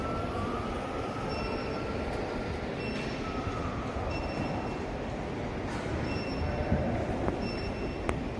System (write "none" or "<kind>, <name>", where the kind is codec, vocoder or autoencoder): none